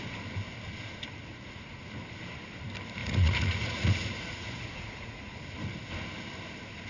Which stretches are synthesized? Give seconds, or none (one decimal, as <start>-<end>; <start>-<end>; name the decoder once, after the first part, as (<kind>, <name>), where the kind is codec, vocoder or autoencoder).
1.3-1.8 (vocoder, Vocos); 3.0-5.3